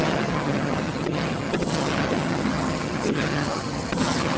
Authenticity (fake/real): fake